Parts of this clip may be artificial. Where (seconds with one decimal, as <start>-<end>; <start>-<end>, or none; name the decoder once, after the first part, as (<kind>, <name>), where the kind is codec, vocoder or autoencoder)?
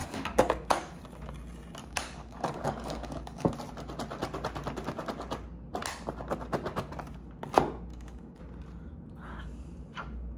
0.0-1.0 (codec, DAC); 1.8-3.5; 7.9-8.4